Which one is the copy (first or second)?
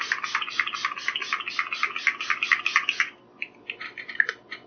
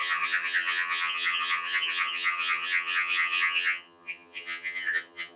second